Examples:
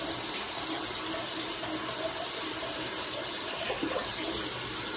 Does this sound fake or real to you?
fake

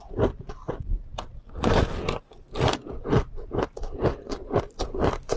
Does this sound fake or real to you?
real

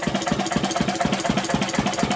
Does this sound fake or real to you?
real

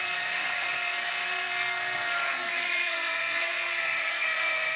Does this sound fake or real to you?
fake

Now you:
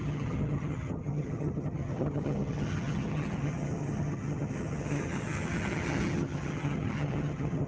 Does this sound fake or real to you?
fake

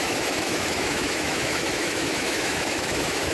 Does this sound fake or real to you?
fake